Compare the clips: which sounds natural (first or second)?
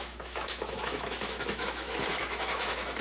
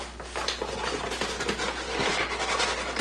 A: second